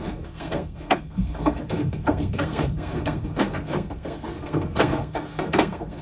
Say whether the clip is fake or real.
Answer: fake